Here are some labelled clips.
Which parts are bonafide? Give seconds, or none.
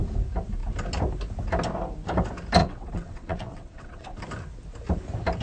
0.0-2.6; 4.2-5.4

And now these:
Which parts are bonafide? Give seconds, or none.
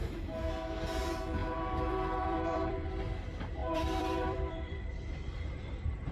0.0-1.4; 3.0-3.6